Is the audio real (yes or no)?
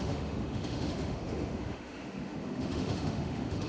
no